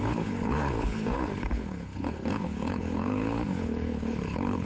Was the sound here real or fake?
fake